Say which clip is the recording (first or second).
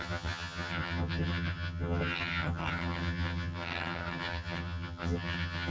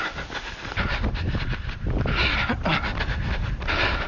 second